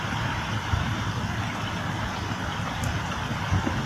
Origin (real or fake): real